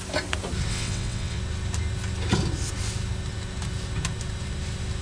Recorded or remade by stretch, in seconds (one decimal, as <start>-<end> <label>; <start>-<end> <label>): 0.0-0.7 recorded; 0.7-1.4 remade; 1.4-5.0 recorded